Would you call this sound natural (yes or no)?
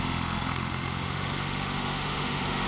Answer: no